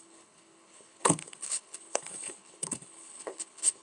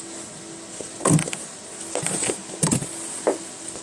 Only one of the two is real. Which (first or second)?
second